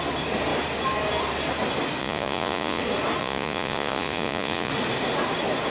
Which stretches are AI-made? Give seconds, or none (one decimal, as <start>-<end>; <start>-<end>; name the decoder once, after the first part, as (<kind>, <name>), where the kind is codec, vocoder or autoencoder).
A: 2.0-2.8 (vocoder, Vocos); 3.2-4.7